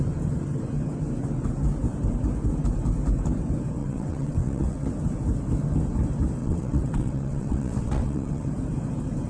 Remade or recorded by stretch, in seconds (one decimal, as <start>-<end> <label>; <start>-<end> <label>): 0.0-3.8 recorded; 3.8-4.9 remade; 4.9-6.4 recorded; 6.4-8.5 remade; 8.5-9.3 recorded